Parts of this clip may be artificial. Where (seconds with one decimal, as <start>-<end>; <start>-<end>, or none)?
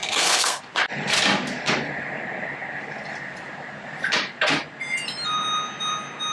0.0-0.6